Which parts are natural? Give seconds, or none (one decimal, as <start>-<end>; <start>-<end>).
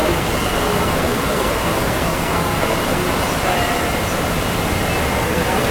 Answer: 3.0-5.2